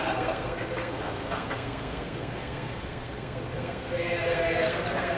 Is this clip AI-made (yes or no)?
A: yes